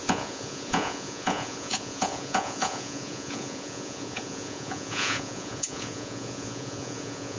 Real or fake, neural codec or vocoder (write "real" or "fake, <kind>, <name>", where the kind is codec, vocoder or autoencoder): fake, vocoder, Vocos